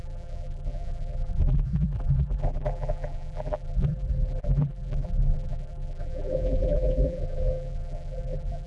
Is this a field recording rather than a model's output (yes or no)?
no